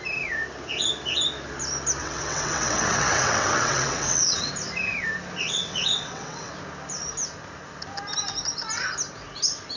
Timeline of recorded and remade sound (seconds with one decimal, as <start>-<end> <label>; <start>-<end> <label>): 0.0-2.0 recorded; 2.0-4.5 remade; 4.5-5.4 recorded; 5.4-6.5 remade; 6.5-9.8 recorded